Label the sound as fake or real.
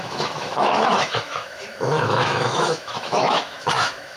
fake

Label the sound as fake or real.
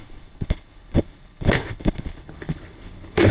fake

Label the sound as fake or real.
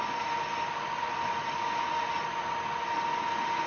real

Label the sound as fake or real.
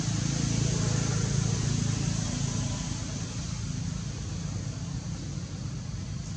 real